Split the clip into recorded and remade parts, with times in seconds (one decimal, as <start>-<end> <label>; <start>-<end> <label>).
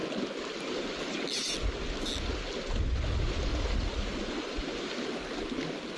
0.0-3.5 recorded; 3.5-4.9 remade; 4.9-6.0 recorded